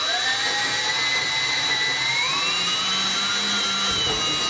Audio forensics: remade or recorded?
recorded